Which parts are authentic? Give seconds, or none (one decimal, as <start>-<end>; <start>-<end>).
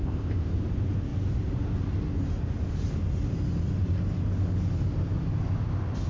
0.5-6.1